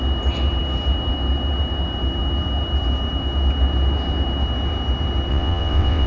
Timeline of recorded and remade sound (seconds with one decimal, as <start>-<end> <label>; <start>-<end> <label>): 0.0-5.3 recorded; 5.3-6.1 remade